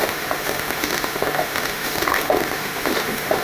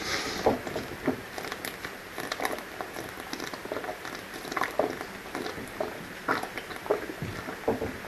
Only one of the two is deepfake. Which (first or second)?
first